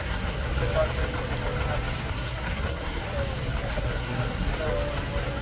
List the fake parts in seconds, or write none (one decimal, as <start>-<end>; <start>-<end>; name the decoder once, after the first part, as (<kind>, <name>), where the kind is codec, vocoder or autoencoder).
0.0-0.5 (codec, SNAC); 2.1-3.1; 3.7-4.5